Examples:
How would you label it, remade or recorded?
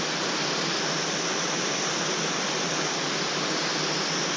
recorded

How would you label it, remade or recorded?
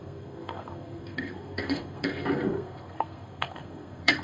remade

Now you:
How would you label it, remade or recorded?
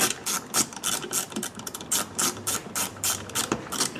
recorded